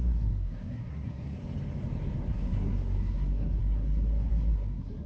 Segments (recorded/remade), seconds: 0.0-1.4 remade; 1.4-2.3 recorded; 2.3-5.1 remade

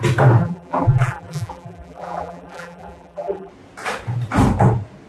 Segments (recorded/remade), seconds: 0.0-0.4 recorded; 0.4-3.5 remade; 3.5-5.1 recorded

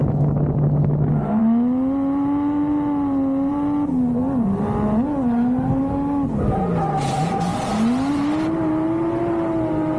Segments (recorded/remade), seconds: 0.0-10.0 recorded

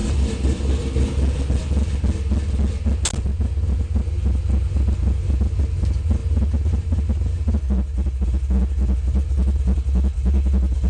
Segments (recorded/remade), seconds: 0.0-0.6 remade; 0.6-10.9 recorded

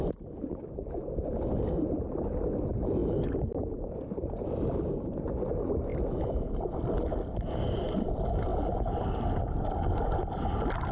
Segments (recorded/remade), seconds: 0.0-10.9 recorded

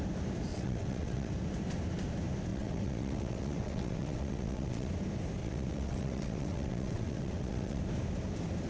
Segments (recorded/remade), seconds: 0.0-0.5 recorded; 0.5-1.3 remade; 1.3-2.5 recorded; 2.5-4.9 remade; 4.9-5.4 recorded; 5.4-7.8 remade; 7.8-8.7 recorded

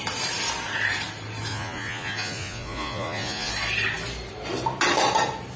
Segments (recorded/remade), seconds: 0.0-1.5 recorded; 1.5-3.5 remade; 3.5-5.6 recorded